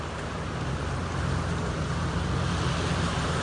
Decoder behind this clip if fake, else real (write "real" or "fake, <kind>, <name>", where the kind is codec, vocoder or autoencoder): real